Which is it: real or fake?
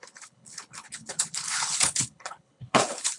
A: fake